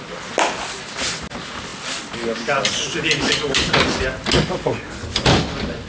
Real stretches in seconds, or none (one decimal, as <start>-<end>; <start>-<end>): 0.0-5.9